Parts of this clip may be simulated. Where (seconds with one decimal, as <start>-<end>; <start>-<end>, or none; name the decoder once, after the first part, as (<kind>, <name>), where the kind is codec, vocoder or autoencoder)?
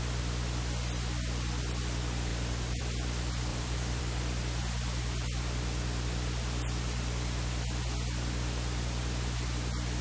2.3-2.8 (vocoder, BigVGAN v2); 3.5-4.0